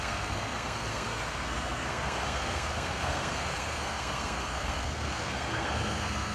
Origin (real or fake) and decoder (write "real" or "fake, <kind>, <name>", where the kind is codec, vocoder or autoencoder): fake, codec, SNAC